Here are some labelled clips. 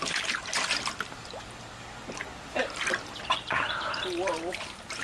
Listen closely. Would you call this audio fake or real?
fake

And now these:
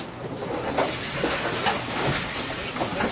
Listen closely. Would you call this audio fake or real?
real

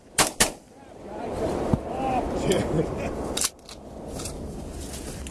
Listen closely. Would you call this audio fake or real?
fake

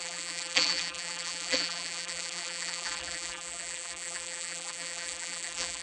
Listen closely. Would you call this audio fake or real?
fake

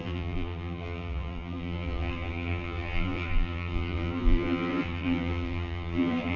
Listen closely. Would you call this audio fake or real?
fake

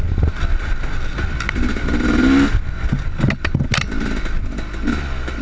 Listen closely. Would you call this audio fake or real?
real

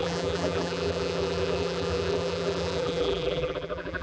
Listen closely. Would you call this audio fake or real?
fake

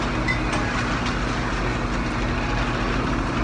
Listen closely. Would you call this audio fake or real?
real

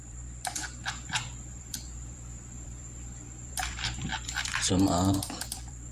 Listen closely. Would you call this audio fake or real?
fake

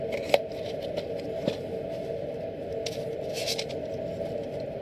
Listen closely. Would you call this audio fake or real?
real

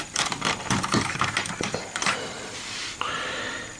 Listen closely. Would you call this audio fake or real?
fake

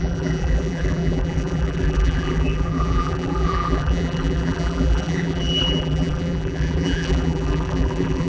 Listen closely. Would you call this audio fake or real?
fake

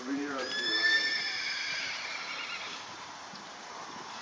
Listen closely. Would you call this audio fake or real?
fake